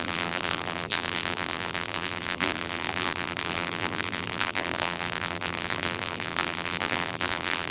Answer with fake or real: fake